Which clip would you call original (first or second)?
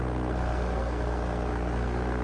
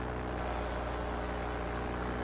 second